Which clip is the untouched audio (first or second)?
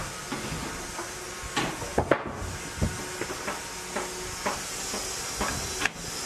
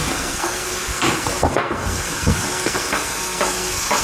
first